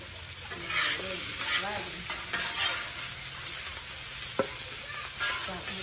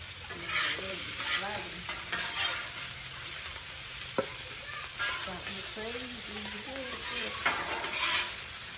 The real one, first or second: first